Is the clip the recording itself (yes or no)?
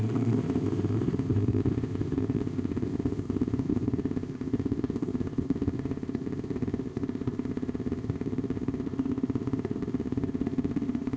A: no